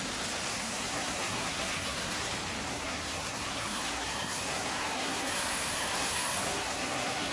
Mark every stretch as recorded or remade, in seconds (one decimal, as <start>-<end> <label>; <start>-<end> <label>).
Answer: 0.0-0.5 recorded; 0.5-2.3 remade; 2.3-2.7 recorded; 2.7-7.3 remade